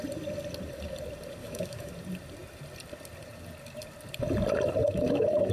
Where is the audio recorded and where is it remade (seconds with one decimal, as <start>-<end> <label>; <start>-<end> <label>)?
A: 0.0-1.4 recorded; 1.4-1.9 remade; 1.9-4.8 recorded; 4.8-5.5 remade